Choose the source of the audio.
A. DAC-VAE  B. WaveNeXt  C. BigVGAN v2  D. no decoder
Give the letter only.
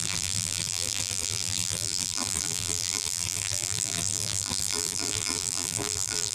C